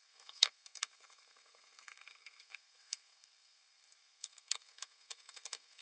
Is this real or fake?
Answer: fake